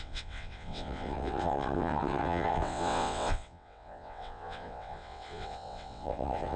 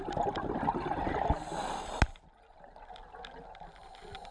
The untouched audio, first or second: second